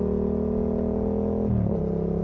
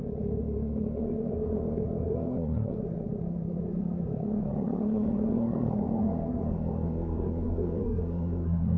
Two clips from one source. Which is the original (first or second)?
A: first